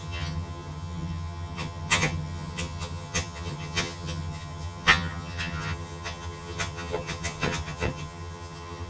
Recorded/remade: remade